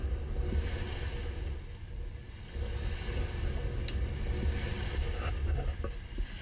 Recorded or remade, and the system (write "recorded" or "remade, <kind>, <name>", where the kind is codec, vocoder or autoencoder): recorded